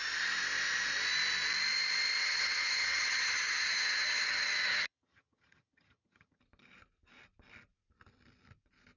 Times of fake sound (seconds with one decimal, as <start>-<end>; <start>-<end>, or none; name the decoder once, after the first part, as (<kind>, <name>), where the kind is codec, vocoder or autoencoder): 2.2-6.4 (vocoder, HiFi-GAN)